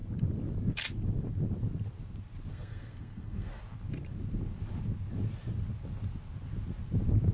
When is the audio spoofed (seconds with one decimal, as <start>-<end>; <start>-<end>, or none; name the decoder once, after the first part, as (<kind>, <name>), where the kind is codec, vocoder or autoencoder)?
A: 2.5-3.6 (codec, SNAC)